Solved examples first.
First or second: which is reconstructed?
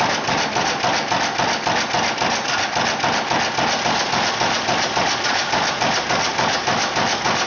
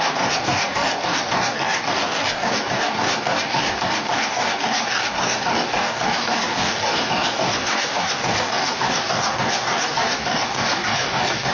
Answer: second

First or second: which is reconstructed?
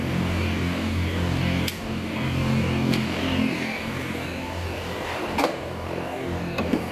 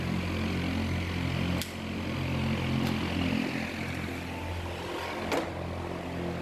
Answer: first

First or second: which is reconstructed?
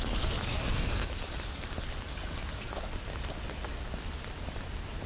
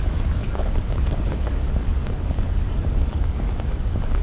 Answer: second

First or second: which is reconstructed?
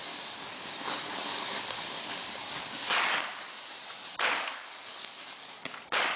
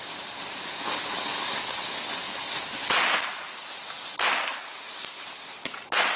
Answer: first